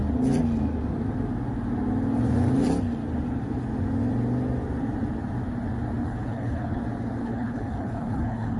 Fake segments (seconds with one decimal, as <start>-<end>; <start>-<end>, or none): 6.0-6.8; 7.2-8.6

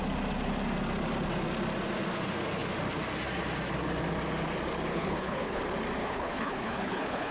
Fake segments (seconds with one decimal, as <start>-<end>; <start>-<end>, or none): 4.9-5.6; 6.0-7.3

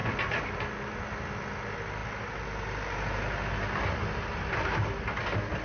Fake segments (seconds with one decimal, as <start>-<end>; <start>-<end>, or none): none